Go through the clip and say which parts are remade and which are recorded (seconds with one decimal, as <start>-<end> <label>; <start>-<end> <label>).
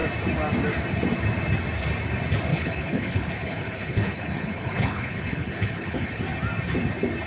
0.0-2.5 recorded; 2.5-6.2 remade; 6.2-7.3 recorded